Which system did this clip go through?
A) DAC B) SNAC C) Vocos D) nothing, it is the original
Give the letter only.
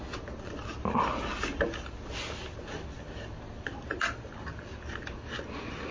D